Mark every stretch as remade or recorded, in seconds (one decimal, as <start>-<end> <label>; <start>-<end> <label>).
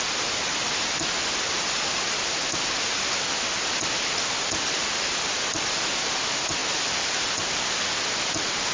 0.0-1.3 recorded; 1.3-2.6 remade; 2.6-6.6 recorded; 6.6-7.4 remade; 7.4-8.7 recorded